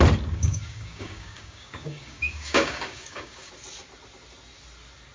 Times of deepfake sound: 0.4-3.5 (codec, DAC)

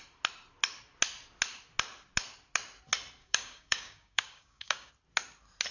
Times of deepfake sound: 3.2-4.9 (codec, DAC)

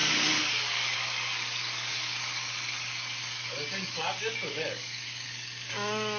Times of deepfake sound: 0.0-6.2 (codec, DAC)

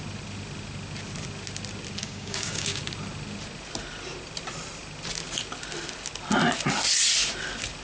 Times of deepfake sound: 2.0-2.8 (codec, DAC)

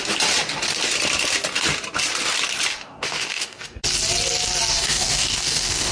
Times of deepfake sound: 2.7-3.8 (codec, DAC); 4.7-5.9